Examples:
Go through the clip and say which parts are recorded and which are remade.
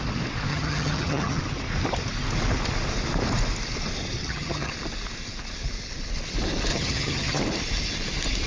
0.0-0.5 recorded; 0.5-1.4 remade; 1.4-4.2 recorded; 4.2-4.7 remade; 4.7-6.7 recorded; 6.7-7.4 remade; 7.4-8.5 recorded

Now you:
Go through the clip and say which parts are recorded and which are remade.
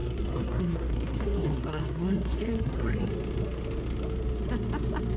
0.0-3.1 remade; 3.1-5.2 recorded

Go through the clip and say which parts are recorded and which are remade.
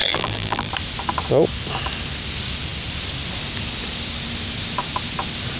0.0-0.7 remade; 0.7-5.6 recorded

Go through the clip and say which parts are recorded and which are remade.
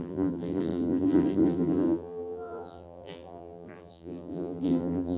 0.0-5.2 remade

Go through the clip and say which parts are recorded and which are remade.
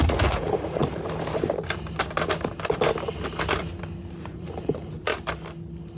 0.0-0.8 remade; 0.8-4.2 recorded; 4.2-5.1 remade; 5.1-6.0 recorded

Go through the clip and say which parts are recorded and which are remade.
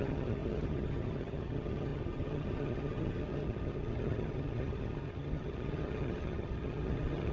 0.0-7.3 remade